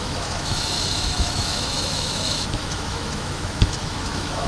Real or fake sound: fake